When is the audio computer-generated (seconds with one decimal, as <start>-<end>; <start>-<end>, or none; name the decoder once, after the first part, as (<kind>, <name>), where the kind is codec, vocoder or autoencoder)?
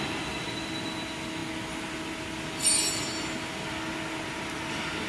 none